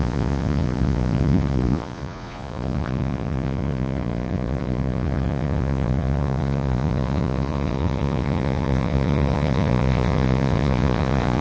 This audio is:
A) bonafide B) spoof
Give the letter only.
B